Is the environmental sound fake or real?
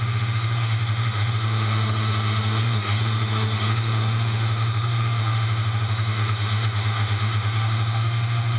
fake